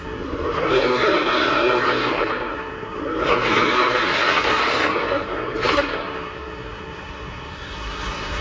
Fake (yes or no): yes